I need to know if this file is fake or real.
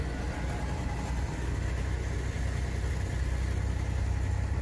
real